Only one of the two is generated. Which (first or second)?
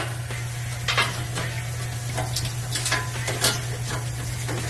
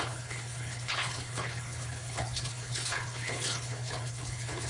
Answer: second